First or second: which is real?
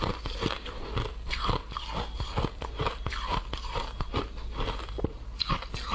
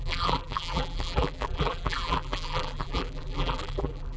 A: first